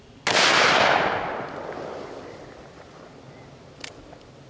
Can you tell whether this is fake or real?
real